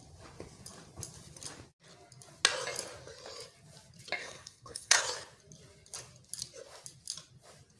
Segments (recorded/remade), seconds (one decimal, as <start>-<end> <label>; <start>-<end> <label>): 0.0-4.2 recorded; 4.2-5.0 remade; 5.0-7.8 recorded